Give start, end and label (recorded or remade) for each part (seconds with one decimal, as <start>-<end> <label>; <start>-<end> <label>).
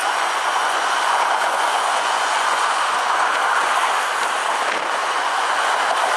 0.0-3.7 remade; 3.7-5.0 recorded; 5.0-5.7 remade; 5.7-6.2 recorded